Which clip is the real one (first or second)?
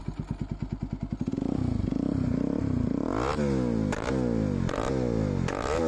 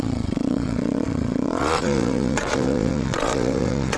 first